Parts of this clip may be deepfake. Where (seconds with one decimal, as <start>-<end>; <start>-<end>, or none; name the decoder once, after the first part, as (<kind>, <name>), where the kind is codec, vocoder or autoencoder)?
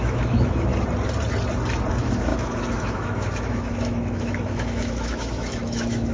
0.0-0.7 (autoencoder, DAC-VAE); 1.9-6.1